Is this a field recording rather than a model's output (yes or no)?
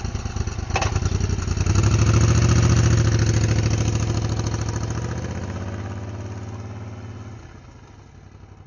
yes